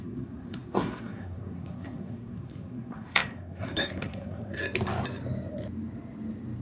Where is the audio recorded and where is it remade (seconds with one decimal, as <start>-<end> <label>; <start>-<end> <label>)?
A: 0.0-4.6 remade; 4.6-6.6 recorded